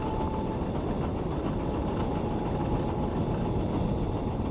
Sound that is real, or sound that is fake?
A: real